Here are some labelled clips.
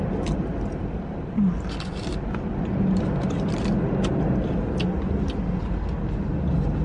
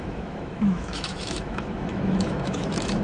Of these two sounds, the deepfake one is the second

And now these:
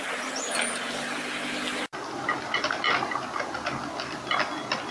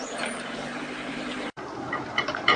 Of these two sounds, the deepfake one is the second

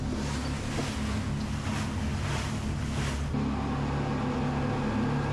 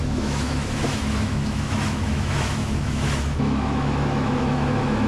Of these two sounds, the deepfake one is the second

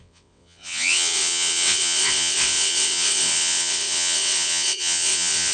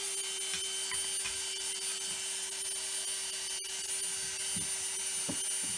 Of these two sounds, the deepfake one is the first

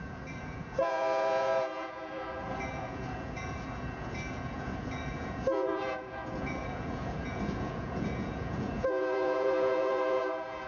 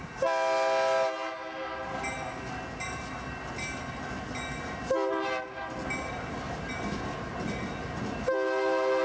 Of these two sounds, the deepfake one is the first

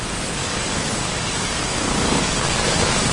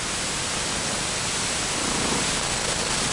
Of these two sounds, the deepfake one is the first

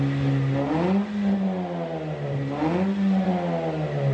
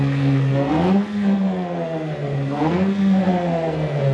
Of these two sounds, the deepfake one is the second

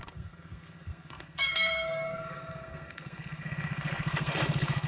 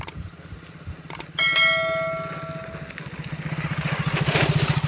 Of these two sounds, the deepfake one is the first